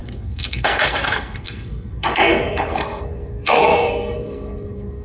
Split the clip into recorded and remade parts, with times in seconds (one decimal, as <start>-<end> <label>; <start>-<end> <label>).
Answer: 0.0-5.0 remade